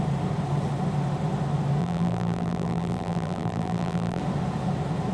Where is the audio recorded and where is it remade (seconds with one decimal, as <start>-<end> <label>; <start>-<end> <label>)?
0.0-1.8 recorded; 1.8-4.2 remade; 4.2-5.1 recorded